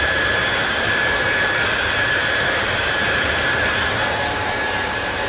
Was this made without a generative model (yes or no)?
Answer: no